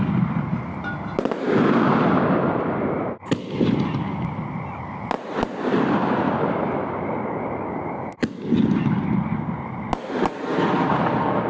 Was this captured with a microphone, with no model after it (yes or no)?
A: yes